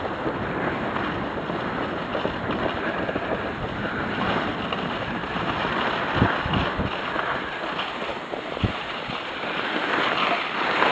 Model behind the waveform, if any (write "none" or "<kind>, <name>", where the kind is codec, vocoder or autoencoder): none